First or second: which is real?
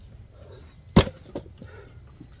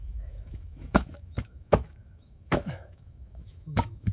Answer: first